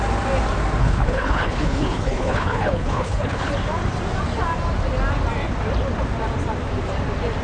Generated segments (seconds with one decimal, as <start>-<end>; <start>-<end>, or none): 0.8-3.5